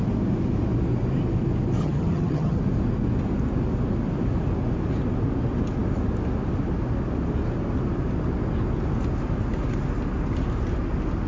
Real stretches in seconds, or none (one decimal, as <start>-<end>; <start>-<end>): 0.0-1.8; 2.6-11.3